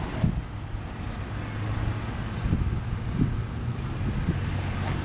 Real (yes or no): yes